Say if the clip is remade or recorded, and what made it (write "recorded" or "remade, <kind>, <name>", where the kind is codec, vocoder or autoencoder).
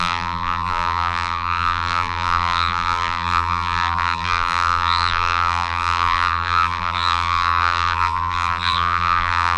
remade, vocoder, BigVGAN v2